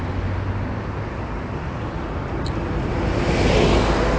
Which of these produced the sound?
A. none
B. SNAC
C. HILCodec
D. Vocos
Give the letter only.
A